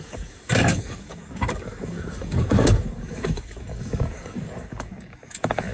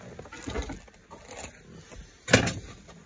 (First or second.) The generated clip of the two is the first